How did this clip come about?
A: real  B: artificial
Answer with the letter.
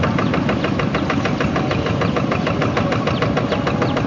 A